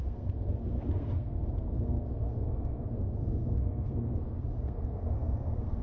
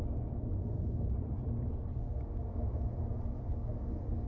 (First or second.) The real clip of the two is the second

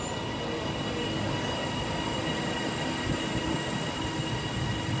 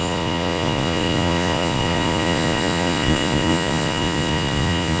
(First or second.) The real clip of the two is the first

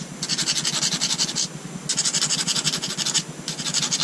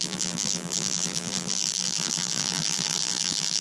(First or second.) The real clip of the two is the first